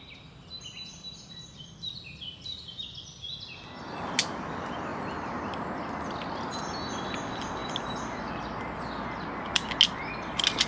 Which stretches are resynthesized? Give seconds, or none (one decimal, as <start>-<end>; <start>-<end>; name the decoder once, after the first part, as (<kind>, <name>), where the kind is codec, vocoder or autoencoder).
none